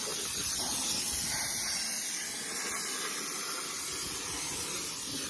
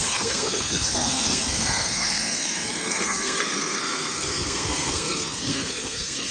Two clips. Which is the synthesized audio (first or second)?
second